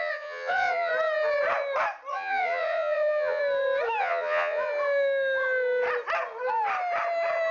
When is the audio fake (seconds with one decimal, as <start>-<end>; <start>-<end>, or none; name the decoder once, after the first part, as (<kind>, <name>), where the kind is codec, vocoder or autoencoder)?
0.0-0.9 (vocoder, Vocos); 2.1-3.4; 4.0-4.7